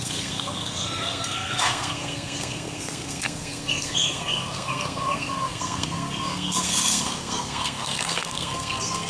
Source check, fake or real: fake